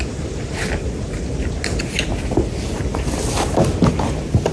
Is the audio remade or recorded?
recorded